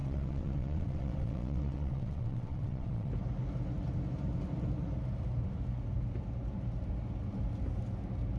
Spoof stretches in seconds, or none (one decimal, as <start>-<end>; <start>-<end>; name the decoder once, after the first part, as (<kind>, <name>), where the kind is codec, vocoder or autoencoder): 0.0-3.1 (vocoder, WaveNeXt)